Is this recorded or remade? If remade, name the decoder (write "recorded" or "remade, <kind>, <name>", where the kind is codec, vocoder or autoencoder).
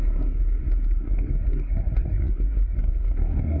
remade, codec, SNAC